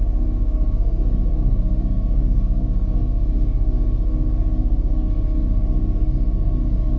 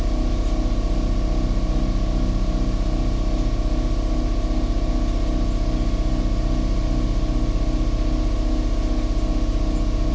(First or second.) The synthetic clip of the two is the first